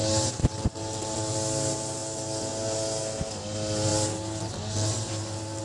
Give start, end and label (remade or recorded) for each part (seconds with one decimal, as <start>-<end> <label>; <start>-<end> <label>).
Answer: 0.0-5.6 recorded